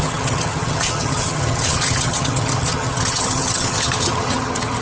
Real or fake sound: fake